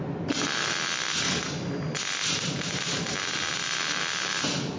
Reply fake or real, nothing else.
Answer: real